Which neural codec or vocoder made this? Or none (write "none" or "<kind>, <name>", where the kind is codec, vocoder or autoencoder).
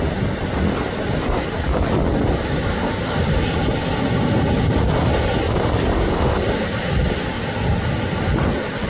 none